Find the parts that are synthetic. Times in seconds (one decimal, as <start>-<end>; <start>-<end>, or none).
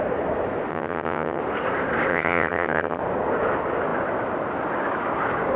0.7-1.4; 2.1-3.0